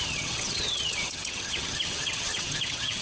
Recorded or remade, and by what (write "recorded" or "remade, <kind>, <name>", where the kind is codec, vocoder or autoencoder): remade, vocoder, HiFi-GAN